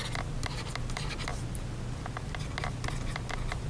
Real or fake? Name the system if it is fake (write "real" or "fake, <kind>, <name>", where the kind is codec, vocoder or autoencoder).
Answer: real